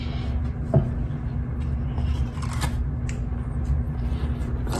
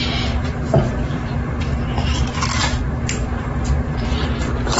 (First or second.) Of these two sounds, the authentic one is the first